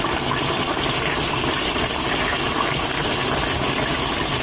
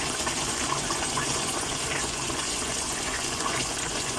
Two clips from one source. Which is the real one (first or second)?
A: first